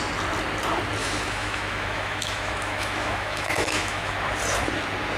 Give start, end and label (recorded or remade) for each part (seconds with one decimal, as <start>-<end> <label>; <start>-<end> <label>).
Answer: 0.0-1.0 recorded; 1.0-4.1 remade; 4.1-5.2 recorded